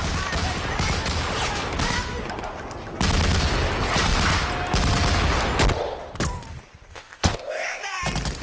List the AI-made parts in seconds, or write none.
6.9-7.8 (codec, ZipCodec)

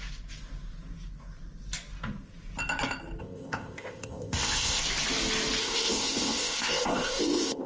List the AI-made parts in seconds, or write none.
3.2-4.8 (codec, ZipCodec); 5.6-7.7

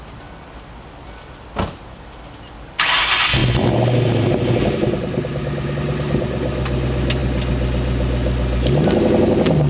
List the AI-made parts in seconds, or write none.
none

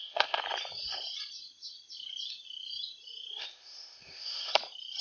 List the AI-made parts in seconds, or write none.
0.0-0.4 (codec, ZipCodec); 3.4-4.5

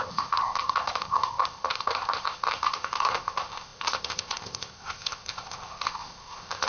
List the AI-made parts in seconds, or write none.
0.0-6.7 (codec, ZipCodec)

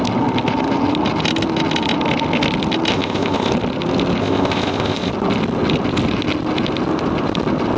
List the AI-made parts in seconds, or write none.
2.9-3.5 (codec, ZipCodec); 4.2-5.1